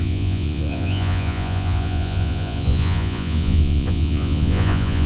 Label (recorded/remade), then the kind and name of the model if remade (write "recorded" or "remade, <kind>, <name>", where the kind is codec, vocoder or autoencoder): remade, vocoder, Vocos